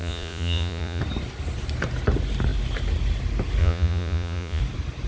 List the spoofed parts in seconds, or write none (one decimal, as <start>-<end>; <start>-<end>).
0.0-1.0; 3.6-4.6